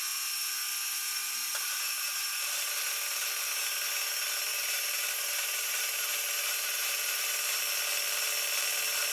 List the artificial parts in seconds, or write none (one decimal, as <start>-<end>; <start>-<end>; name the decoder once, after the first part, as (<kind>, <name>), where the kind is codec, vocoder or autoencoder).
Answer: 1.0-2.7 (vocoder, BigVGAN v2); 4.5-7.6